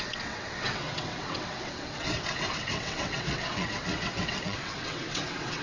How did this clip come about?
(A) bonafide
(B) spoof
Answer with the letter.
B